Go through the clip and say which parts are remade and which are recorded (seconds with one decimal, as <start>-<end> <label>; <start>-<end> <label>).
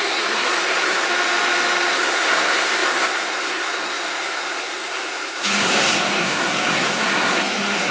0.0-1.1 remade; 1.1-1.9 recorded; 1.9-7.9 remade